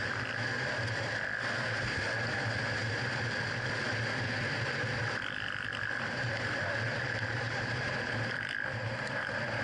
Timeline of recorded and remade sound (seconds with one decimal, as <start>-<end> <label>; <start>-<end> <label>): 0.0-9.6 recorded

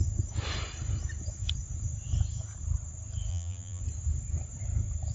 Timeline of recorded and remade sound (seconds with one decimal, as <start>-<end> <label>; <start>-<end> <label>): 0.0-3.3 recorded; 3.3-3.8 remade; 3.8-5.1 recorded

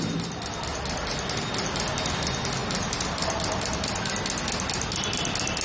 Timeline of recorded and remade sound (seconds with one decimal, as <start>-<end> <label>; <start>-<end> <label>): 0.0-2.6 recorded; 2.6-4.1 remade; 4.1-5.6 recorded

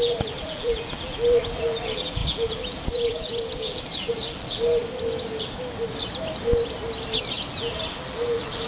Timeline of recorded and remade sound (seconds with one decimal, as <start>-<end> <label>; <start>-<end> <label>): 0.0-4.8 remade; 4.8-7.5 recorded; 7.5-8.7 remade

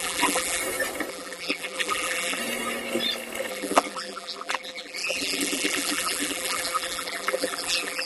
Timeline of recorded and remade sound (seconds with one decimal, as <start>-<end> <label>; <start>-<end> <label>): 0.0-0.6 remade; 0.6-1.1 recorded; 1.1-2.4 remade; 2.4-3.5 recorded; 3.5-8.1 remade

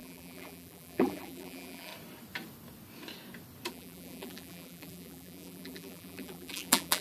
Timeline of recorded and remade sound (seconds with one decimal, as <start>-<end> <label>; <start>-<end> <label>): 0.0-1.9 remade; 1.9-3.7 recorded; 3.7-7.0 remade